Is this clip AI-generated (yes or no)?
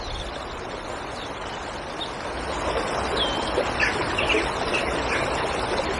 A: no